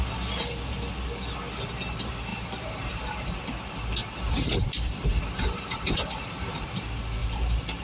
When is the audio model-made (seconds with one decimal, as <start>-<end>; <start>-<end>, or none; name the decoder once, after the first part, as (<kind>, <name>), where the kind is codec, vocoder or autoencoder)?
2.3-3.0 (vocoder, BigVGAN v2); 4.0-5.2; 7.2-7.8